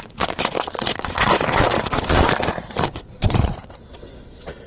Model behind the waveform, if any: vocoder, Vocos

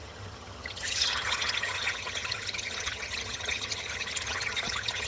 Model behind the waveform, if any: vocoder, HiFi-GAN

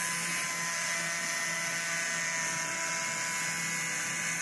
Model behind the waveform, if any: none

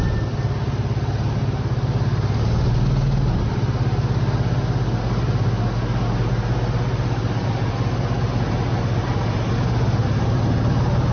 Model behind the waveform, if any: none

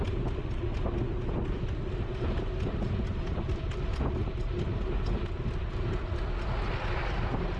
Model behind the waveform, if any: none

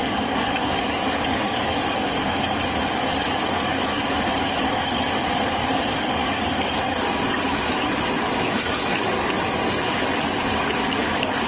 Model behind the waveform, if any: codec, DAC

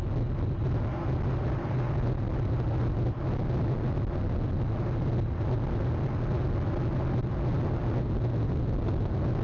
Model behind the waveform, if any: none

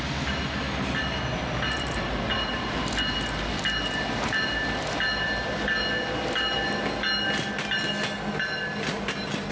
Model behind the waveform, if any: none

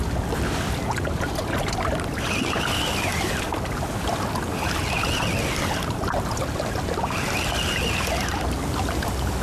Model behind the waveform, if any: none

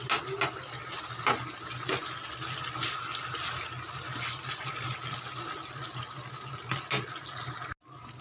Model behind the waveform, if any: none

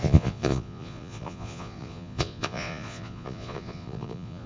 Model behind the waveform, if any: vocoder, Vocos